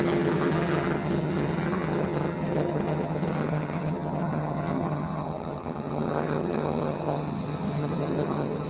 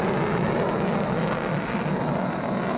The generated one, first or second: first